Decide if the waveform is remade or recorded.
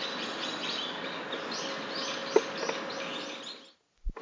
recorded